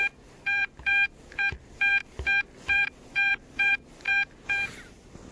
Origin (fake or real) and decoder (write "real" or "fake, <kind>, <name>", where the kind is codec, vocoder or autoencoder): fake, vocoder, BigVGAN v2